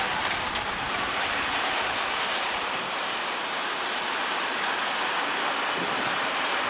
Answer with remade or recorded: recorded